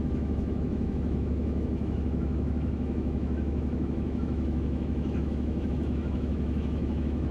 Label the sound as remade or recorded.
remade